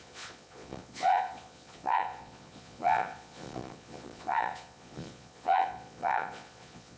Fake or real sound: fake